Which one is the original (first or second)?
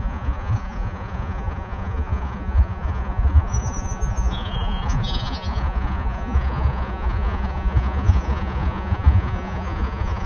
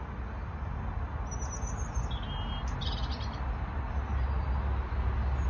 second